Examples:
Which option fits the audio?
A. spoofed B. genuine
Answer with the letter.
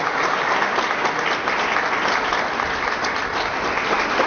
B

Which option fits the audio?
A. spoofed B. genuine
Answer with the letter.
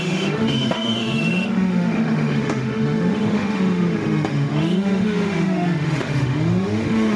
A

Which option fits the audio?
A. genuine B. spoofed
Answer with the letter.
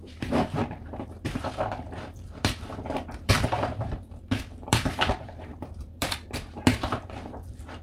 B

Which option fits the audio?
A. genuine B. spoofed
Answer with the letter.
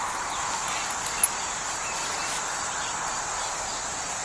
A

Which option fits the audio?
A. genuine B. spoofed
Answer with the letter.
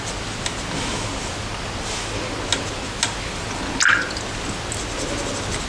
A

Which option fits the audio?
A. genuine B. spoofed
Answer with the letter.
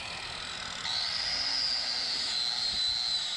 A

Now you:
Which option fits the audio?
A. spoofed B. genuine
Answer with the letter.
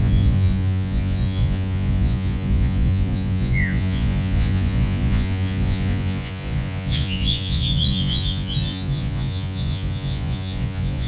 A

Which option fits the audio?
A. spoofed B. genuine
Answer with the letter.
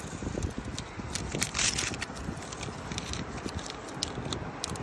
B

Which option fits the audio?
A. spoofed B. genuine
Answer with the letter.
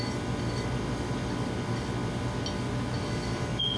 B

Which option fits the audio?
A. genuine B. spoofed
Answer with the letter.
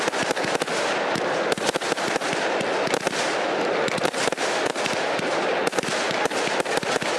A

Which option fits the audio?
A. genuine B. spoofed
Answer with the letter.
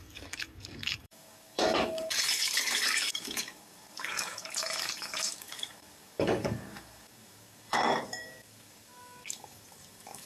B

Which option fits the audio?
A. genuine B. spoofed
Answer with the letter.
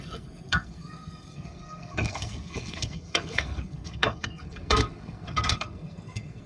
B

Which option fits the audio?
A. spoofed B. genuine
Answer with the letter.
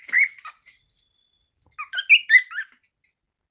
B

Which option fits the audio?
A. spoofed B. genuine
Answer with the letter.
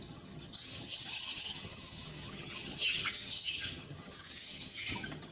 A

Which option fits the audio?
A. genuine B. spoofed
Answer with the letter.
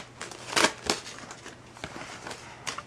A